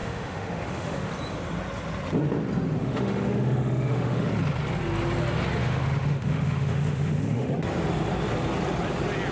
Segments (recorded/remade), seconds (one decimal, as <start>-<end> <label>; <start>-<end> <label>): 0.0-1.1 remade; 1.1-2.8 recorded; 2.8-4.3 remade; 4.3-5.6 recorded; 5.6-7.5 remade; 7.5-9.3 recorded